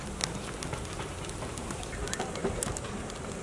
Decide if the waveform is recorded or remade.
recorded